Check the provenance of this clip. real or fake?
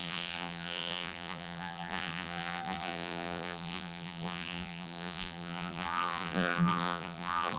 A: fake